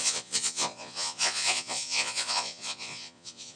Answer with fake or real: fake